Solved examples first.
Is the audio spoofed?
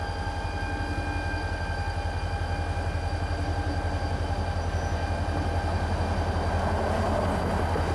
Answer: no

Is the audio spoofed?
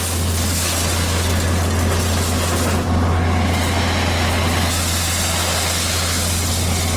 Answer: no